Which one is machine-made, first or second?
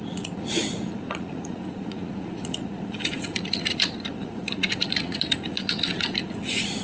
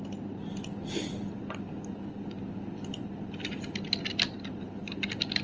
first